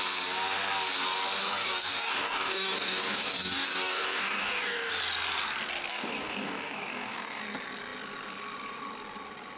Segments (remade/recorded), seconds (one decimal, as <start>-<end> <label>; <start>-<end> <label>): 0.0-1.4 recorded; 1.4-4.9 remade; 4.9-5.9 recorded; 5.9-7.4 remade; 7.4-9.6 recorded